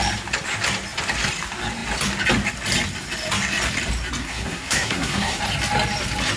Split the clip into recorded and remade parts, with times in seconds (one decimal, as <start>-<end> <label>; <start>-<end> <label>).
0.0-4.2 recorded; 4.2-5.4 remade; 5.4-6.4 recorded